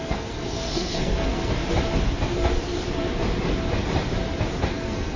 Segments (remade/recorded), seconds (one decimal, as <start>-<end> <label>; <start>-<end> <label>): 0.0-1.6 remade; 1.6-4.7 recorded; 4.7-5.2 remade